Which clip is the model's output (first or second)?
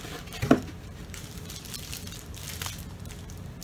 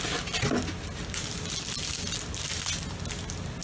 first